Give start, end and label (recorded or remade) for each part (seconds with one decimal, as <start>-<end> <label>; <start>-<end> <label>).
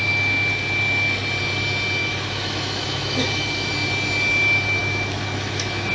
0.0-2.0 recorded; 2.0-3.7 remade; 3.7-4.8 recorded; 4.8-5.9 remade